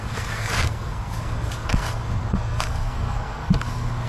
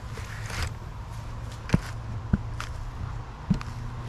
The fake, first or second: first